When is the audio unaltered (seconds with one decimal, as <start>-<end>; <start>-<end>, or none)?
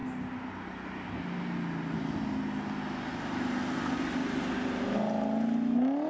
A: 0.0-4.2; 4.7-6.1